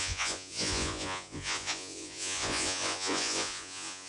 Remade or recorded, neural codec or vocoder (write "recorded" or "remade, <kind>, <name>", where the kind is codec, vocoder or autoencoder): remade, vocoder, Vocos